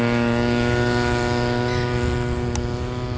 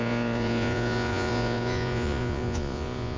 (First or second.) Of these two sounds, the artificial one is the second